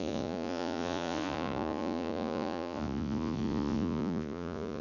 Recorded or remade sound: remade